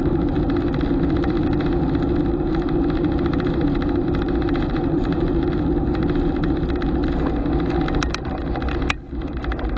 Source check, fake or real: real